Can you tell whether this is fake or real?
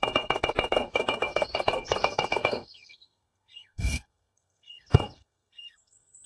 fake